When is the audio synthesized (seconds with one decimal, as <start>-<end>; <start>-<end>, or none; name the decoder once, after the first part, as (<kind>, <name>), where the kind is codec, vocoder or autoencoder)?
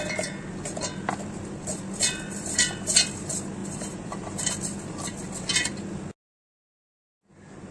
3.6-4.5 (vocoder, BigVGAN v2)